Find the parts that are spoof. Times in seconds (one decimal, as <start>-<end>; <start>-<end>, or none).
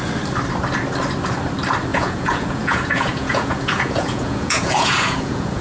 1.9-5.6